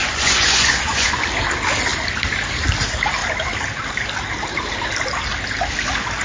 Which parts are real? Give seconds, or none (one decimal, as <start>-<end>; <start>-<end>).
1.2-6.2